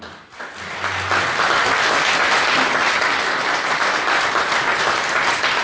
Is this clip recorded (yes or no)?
yes